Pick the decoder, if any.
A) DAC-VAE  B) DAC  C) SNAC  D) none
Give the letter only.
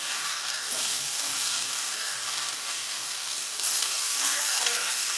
B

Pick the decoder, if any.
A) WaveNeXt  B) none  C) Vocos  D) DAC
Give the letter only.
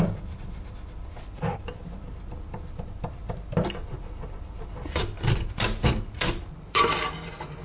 B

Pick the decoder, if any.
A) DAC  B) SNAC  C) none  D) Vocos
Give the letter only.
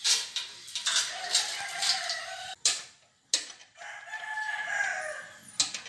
C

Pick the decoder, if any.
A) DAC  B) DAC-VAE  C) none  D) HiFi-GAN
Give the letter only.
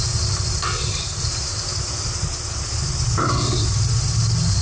C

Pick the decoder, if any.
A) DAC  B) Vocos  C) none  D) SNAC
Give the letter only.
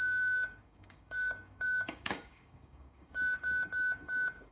A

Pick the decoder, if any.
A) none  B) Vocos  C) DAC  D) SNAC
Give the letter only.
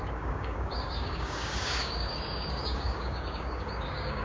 C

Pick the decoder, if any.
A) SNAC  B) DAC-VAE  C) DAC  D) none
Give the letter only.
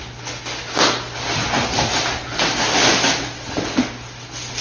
D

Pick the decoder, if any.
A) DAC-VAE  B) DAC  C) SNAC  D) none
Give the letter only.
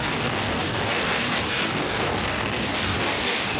B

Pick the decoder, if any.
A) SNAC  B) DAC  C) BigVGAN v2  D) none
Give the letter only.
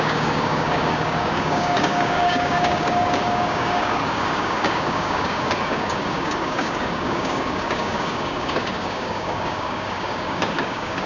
B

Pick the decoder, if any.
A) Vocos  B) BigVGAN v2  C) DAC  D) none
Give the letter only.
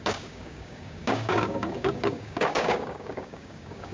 C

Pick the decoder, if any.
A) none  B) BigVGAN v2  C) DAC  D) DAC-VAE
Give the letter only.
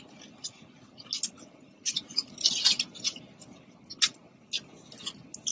A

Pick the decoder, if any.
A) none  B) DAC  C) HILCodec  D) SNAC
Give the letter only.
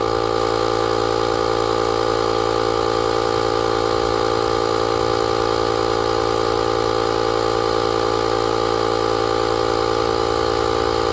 A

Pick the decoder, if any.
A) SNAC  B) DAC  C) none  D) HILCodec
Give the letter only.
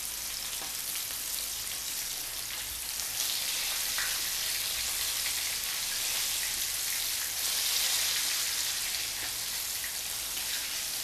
C